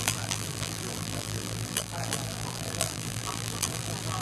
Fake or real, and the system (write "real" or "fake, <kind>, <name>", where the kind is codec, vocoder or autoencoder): fake, vocoder, BigVGAN v2